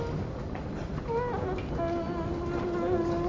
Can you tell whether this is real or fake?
real